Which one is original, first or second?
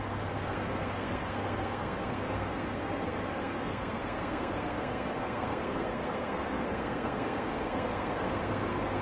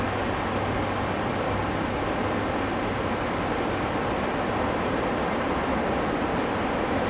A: second